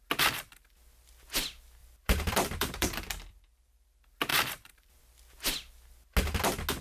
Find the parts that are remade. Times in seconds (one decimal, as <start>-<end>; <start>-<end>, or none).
1.8-3.9; 4.3-5.0